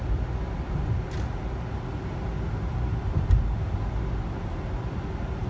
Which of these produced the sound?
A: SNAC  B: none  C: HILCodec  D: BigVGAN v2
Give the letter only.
B